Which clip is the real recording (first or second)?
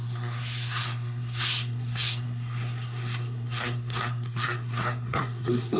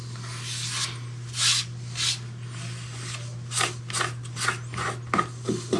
second